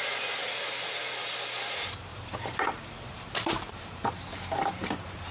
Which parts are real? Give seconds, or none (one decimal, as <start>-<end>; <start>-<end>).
0.0-0.4; 1.1-2.1